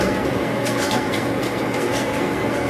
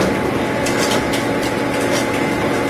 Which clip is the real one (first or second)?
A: second